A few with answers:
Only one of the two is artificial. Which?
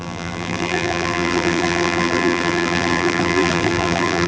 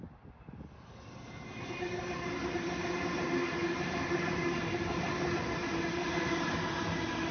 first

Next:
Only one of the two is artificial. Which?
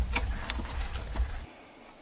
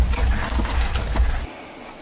first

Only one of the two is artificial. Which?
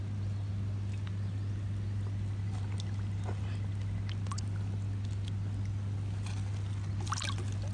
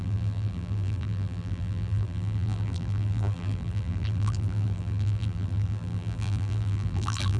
second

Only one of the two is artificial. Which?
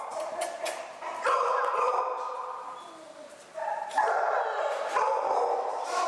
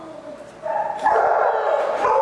first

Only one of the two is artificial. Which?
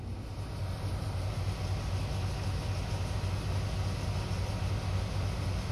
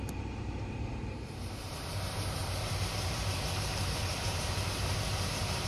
second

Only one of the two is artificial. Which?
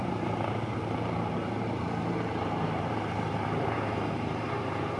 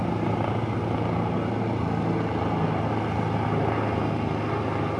first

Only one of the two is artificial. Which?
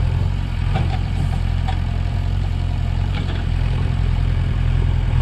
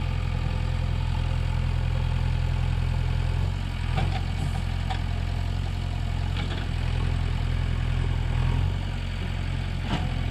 first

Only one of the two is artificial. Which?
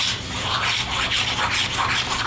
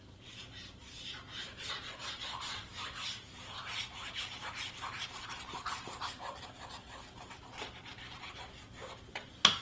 second